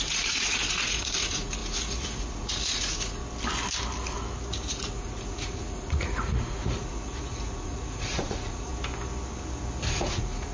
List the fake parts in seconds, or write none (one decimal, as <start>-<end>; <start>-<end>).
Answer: 0.0-3.2; 4.5-8.7; 10.0-10.5